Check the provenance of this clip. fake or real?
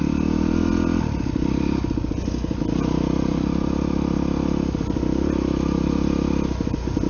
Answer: real